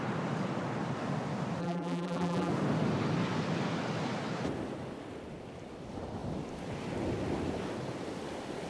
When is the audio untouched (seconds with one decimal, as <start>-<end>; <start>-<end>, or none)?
0.0-1.6; 2.5-8.7